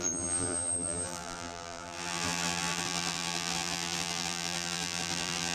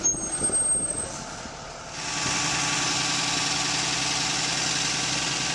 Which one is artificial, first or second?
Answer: first